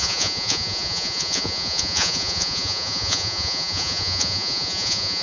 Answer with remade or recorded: remade